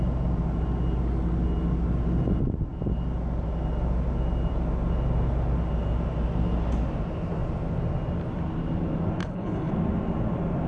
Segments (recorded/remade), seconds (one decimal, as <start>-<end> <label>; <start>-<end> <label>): 0.0-9.2 recorded; 9.2-9.7 remade; 9.7-10.7 recorded